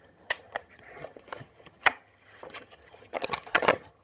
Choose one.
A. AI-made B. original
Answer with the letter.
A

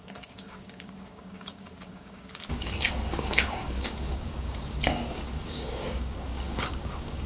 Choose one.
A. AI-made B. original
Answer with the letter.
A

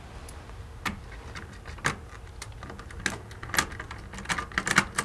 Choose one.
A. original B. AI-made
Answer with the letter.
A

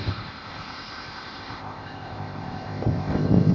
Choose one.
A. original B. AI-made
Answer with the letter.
B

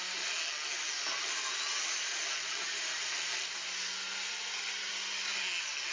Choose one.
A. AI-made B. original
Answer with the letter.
B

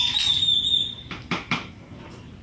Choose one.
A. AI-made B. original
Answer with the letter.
A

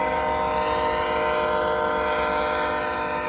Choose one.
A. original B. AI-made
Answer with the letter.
A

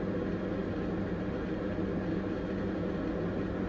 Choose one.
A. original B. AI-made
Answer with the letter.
A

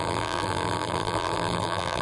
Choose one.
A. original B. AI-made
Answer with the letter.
B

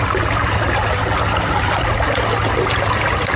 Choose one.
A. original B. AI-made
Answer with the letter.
A